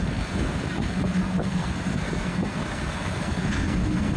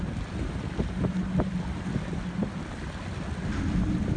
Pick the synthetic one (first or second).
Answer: first